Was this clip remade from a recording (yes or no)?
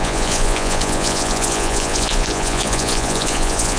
yes